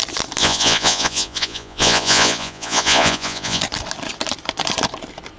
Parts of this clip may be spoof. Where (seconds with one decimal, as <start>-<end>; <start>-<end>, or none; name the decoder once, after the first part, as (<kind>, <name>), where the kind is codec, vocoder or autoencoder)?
0.4-3.6 (vocoder, Vocos)